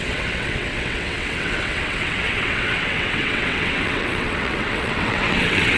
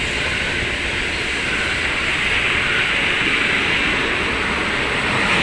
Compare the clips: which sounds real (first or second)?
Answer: second